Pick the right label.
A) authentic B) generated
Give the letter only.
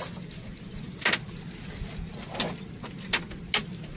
A